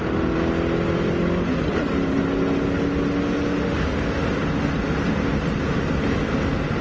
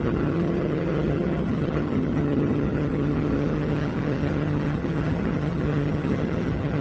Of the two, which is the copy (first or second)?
second